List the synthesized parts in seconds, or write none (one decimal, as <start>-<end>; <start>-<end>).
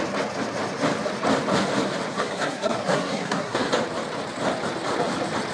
2.1-3.7